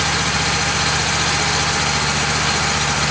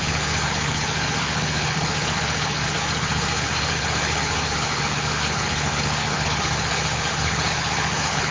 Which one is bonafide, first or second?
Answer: first